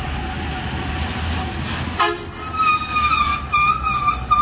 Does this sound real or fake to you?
real